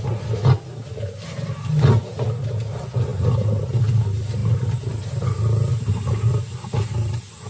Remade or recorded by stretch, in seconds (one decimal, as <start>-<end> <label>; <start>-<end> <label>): 0.0-3.1 recorded; 3.1-3.9 remade; 3.9-7.5 recorded